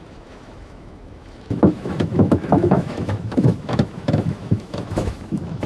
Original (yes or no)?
no